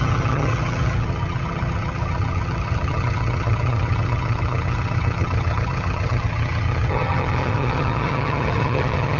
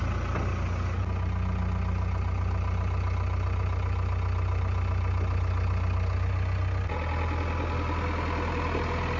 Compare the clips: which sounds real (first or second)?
second